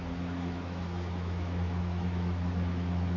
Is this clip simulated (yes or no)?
yes